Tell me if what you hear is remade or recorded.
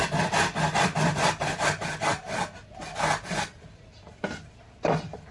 recorded